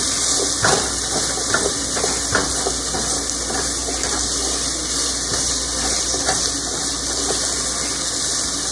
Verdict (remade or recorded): recorded